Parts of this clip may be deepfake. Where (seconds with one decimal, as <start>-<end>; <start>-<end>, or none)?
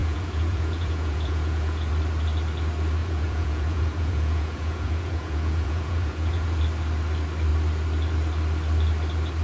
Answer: 0.0-1.9; 3.0-6.6